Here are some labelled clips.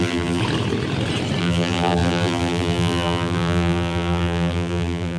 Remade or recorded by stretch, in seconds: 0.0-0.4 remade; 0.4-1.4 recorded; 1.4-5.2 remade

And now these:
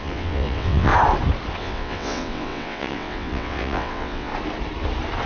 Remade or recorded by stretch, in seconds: 0.0-0.9 remade; 0.9-1.6 recorded; 1.6-4.3 remade; 4.3-5.3 recorded

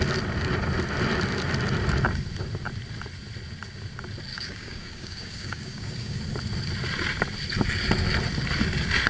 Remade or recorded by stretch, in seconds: 0.0-4.3 recorded; 4.3-6.2 remade; 6.2-9.1 recorded

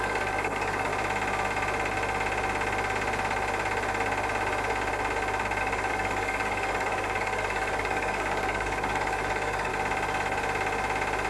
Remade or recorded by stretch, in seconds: 0.0-0.9 remade; 0.9-5.6 recorded; 5.6-9.7 remade; 9.7-11.3 recorded

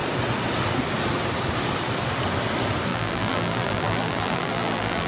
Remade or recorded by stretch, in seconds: 0.0-2.9 recorded; 2.9-5.1 remade

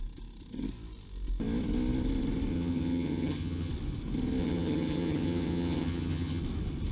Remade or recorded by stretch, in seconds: 0.0-2.5 recorded; 2.5-3.7 remade; 3.7-4.4 recorded; 4.4-6.4 remade; 6.4-6.9 recorded

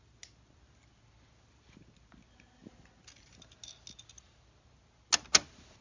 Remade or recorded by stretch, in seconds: 0.0-5.8 recorded

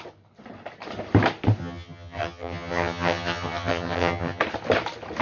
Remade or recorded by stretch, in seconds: 0.0-1.6 recorded; 1.6-4.4 remade; 4.4-5.2 recorded